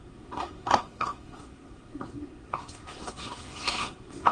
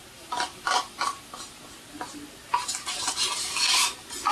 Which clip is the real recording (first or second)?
second